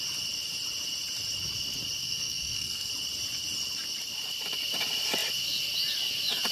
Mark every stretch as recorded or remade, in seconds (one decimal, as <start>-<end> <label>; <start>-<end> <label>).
0.0-2.0 recorded; 2.0-2.9 remade; 2.9-6.5 recorded